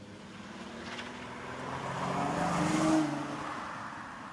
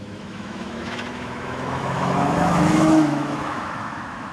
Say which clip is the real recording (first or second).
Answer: first